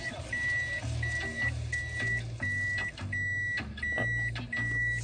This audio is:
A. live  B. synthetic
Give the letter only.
A